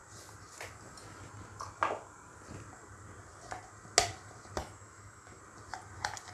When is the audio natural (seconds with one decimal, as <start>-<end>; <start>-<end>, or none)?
0.0-4.6; 5.4-6.3